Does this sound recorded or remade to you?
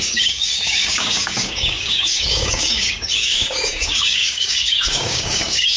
remade